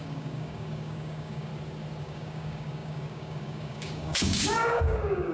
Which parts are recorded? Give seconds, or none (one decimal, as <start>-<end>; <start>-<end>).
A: 1.5-2.0